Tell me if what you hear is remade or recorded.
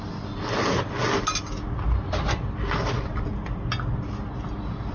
recorded